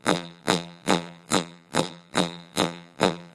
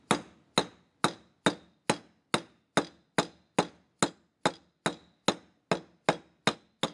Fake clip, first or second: first